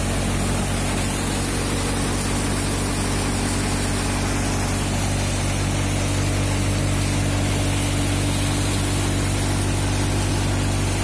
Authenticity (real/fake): real